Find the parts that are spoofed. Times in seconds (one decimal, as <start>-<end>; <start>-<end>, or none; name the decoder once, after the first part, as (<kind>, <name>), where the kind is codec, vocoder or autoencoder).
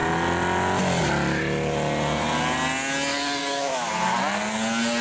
3.4-3.9 (autoencoder, DAC-VAE)